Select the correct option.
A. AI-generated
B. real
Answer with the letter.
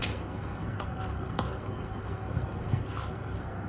A